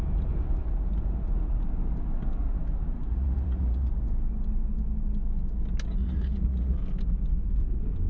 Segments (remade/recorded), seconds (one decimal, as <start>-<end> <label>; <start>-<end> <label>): 0.0-3.1 recorded; 3.1-3.9 remade; 3.9-6.0 recorded; 6.0-6.8 remade; 6.8-8.1 recorded